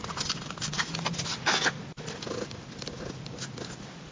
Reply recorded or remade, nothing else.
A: recorded